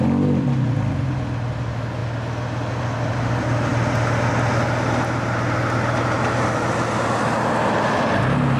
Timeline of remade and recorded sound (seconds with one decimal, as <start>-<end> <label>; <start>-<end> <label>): 0.0-8.6 recorded